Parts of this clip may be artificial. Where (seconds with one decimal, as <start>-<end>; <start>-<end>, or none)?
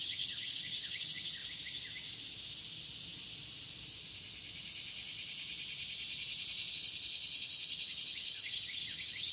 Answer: 0.0-1.4; 6.7-9.3